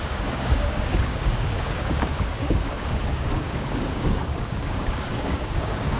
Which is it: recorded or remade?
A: remade